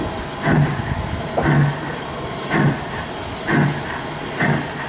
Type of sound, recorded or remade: recorded